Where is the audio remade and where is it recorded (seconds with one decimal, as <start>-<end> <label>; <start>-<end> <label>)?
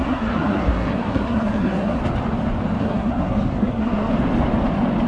0.0-2.0 remade; 2.0-2.8 recorded; 2.8-4.1 remade; 4.1-5.1 recorded